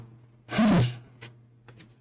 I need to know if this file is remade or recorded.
recorded